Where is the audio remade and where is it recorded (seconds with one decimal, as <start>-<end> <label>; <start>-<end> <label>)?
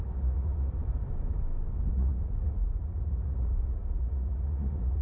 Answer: 0.0-0.8 remade; 0.8-1.9 recorded; 1.9-5.0 remade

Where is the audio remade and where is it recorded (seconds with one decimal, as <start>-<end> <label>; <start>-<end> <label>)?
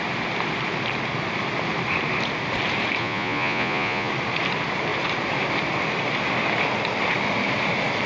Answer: 0.0-3.0 recorded; 3.0-4.1 remade; 4.1-8.1 recorded